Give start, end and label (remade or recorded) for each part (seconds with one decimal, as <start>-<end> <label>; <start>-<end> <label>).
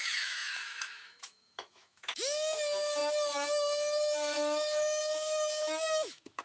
0.0-6.4 remade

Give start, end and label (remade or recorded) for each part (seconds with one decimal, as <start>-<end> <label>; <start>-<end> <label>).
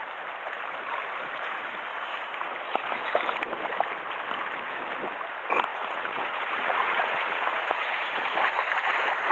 0.0-5.7 recorded; 5.7-8.1 remade; 8.1-9.3 recorded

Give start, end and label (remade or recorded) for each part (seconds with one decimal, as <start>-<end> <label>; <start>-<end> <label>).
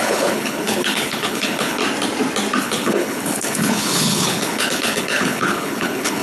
0.0-1.8 remade; 1.8-2.6 recorded; 2.6-6.2 remade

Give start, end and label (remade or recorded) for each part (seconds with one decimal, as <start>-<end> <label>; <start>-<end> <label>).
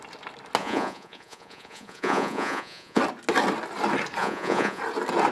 0.0-0.6 recorded; 0.6-3.0 remade; 3.0-4.2 recorded; 4.2-4.8 remade; 4.8-5.3 recorded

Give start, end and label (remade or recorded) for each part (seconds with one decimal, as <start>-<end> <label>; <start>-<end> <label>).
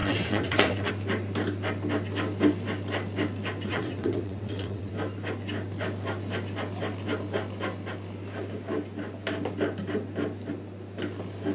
0.0-0.9 remade; 0.9-3.7 recorded; 3.7-4.9 remade; 4.9-11.5 recorded